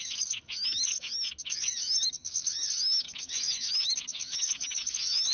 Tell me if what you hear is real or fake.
fake